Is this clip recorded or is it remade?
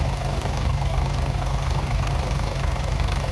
remade